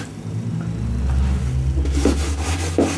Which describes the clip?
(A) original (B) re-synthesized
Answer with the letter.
A